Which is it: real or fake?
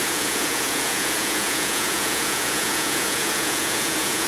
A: fake